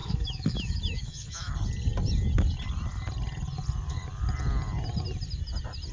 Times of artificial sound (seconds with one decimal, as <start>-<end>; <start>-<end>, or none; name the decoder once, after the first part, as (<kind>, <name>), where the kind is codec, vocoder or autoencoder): 0.0-1.5 (autoencoder, DAC-VAE)